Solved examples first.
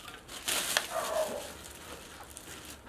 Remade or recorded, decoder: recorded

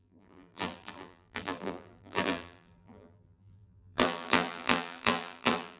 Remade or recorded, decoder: remade, vocoder, BigVGAN v2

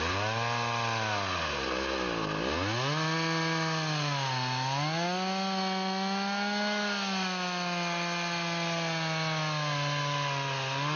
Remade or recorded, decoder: recorded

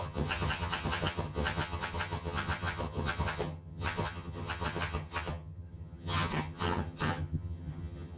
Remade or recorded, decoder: remade, vocoder, HiFi-GAN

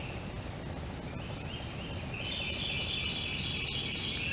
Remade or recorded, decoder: recorded